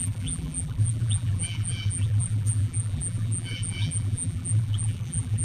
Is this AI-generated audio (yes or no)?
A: yes